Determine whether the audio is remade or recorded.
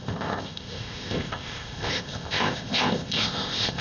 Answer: remade